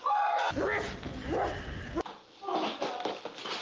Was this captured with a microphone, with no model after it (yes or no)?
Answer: yes